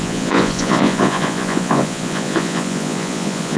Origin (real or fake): fake